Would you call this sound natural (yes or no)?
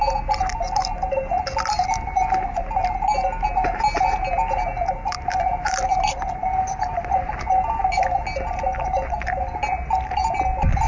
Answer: yes